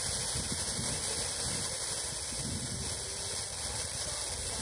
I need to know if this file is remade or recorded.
recorded